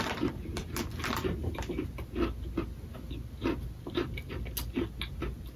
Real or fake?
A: real